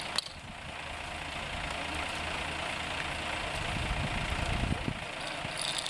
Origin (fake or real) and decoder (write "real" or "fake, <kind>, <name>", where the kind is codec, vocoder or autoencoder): real